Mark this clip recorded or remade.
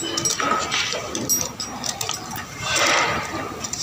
recorded